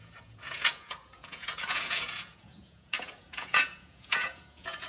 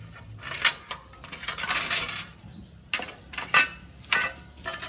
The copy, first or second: first